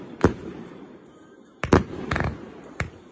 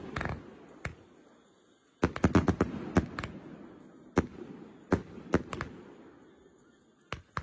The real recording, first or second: second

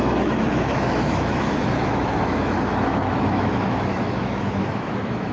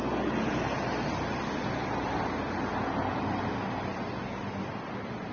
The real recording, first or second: second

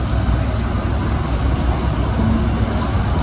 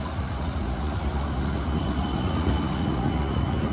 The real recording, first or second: first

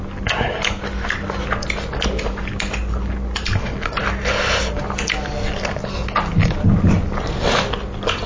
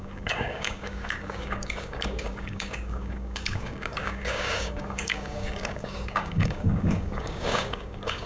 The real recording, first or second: first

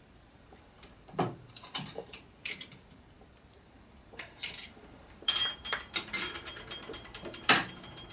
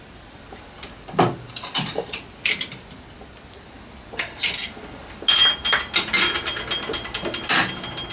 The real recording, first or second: second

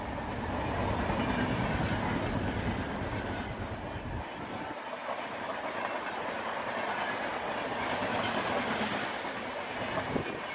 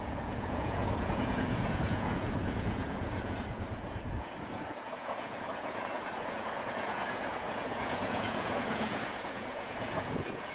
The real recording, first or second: first